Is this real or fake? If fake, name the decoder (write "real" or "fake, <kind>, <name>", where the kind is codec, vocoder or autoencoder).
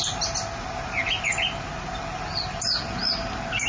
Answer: real